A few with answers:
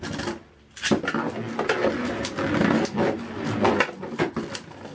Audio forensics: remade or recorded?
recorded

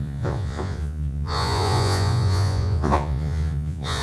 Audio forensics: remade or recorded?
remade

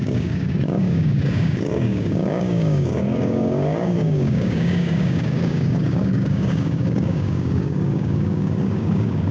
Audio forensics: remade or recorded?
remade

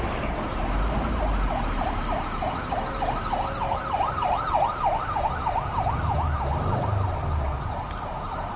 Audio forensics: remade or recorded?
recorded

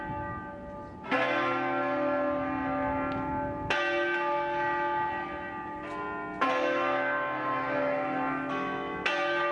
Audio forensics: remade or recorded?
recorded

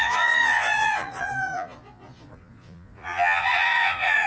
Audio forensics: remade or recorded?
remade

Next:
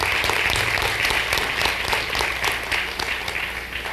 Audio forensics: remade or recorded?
recorded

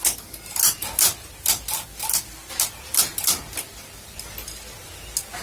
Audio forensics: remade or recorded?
recorded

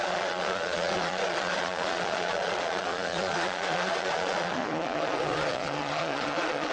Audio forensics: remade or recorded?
remade